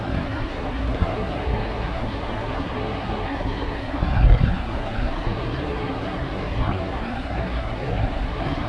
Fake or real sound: fake